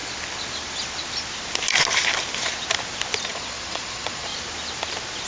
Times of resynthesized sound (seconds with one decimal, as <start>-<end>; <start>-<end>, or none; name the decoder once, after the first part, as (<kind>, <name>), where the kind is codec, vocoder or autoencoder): 3.2-4.3 (vocoder, Vocos)